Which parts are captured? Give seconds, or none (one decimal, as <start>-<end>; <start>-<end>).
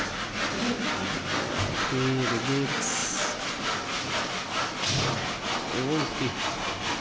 0.0-3.0; 4.3-7.0